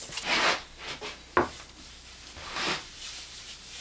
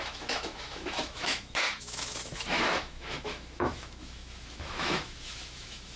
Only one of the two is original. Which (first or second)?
first